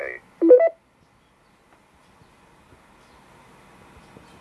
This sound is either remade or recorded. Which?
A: recorded